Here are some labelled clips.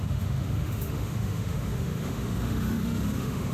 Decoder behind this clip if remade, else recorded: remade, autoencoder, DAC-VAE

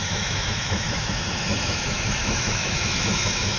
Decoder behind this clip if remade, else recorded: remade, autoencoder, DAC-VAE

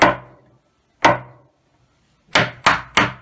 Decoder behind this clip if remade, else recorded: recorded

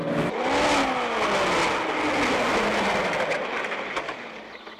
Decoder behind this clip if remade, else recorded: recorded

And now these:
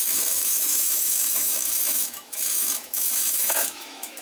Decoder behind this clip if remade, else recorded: remade, autoencoder, DAC-VAE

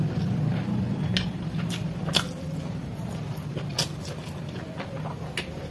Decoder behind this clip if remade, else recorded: recorded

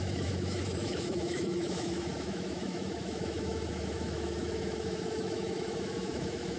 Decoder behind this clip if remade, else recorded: remade, autoencoder, DAC-VAE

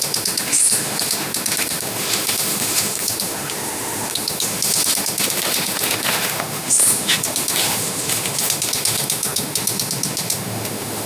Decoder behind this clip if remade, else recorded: remade, autoencoder, DAC-VAE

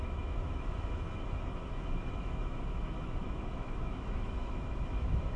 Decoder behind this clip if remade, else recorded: remade, autoencoder, DAC-VAE